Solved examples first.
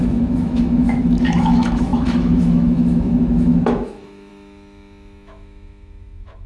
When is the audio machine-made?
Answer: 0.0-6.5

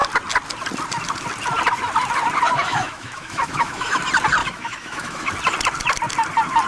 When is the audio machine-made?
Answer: 2.6-4.0; 4.4-5.3

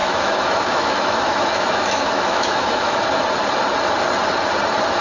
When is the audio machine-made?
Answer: 0.0-3.0

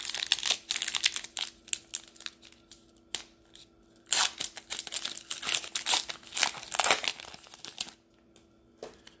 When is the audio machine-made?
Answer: none